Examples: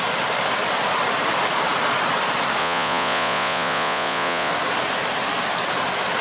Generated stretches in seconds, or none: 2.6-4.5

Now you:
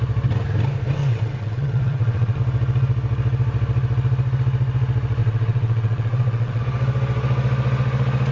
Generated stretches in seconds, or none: 1.0-2.4; 5.2-6.6

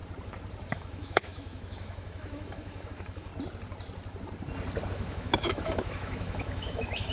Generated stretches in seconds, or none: 0.7-3.3; 4.9-7.1

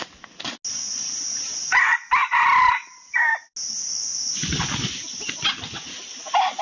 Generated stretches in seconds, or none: none

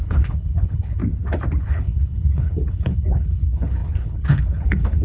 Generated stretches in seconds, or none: 0.0-1.0; 1.6-5.0

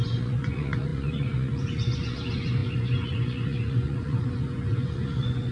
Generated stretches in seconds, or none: 0.0-5.5

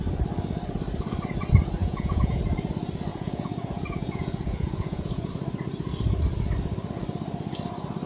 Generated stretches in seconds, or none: 1.8-2.4; 3.1-5.3

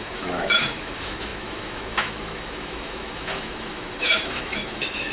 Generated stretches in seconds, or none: 0.0-5.1